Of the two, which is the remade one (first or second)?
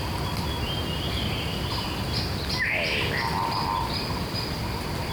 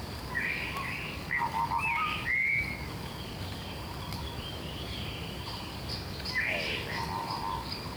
second